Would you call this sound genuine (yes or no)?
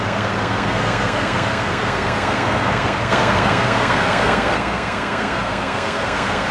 no